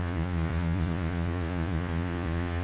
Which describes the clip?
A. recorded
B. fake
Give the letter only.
B